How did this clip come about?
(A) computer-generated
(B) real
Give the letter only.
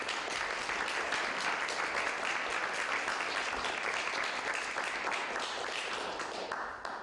B